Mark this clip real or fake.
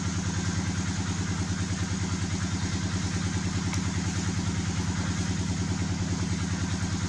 real